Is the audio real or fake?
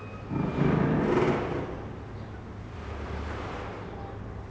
real